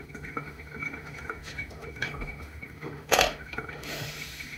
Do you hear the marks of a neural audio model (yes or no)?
yes